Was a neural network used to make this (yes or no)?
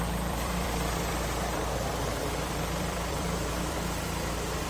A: yes